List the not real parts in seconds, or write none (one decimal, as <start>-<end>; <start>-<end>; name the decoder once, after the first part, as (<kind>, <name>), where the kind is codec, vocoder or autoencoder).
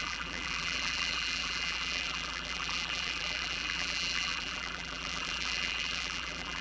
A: 0.0-6.6 (vocoder, BigVGAN v2)